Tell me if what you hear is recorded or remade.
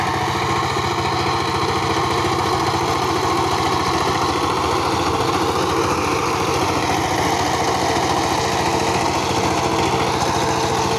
recorded